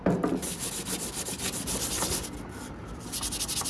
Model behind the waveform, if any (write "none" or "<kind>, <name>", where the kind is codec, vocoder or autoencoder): none